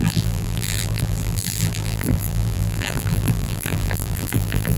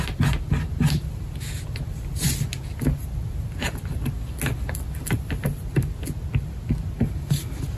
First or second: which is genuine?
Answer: second